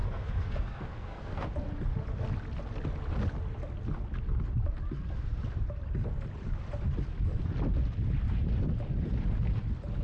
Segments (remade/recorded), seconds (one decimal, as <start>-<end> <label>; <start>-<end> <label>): 0.0-1.5 remade; 1.5-10.0 recorded